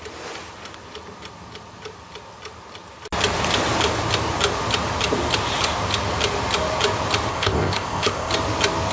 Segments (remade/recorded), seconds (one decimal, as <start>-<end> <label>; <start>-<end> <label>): 0.0-7.3 recorded; 7.3-8.3 remade; 8.3-8.9 recorded